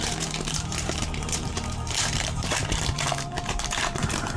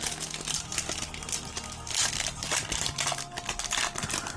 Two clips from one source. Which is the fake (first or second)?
first